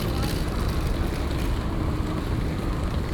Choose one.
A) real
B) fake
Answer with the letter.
A